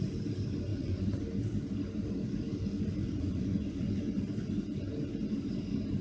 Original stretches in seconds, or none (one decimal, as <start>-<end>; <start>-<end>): 0.0-0.7; 1.2-3.0; 4.1-6.0